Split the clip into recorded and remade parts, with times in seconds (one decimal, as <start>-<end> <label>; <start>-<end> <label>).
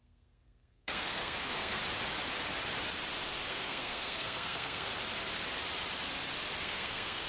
0.0-1.8 remade; 1.8-3.5 recorded; 3.5-4.9 remade; 4.9-6.6 recorded; 6.6-7.3 remade